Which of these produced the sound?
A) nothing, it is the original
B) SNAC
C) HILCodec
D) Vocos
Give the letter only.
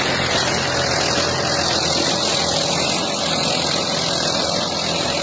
A